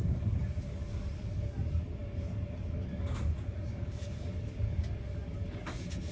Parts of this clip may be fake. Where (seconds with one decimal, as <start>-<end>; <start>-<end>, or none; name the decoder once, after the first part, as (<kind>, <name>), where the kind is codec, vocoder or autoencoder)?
0.0-6.1 (codec, DAC)